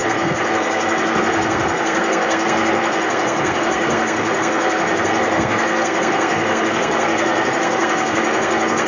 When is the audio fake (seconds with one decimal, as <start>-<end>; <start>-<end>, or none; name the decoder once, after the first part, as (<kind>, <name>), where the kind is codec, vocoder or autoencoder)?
0.0-8.9 (codec, SNAC)